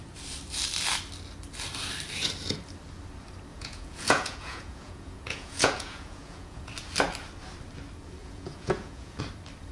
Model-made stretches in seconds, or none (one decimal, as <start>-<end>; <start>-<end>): 3.5-6.7; 8.2-9.2